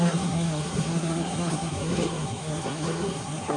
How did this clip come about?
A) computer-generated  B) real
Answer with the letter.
A